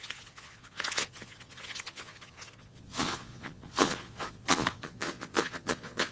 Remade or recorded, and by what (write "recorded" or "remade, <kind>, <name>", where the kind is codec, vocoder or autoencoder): remade, vocoder, Vocos